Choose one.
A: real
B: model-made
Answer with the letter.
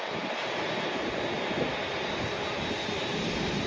A